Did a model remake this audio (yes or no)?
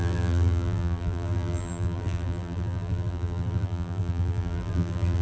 yes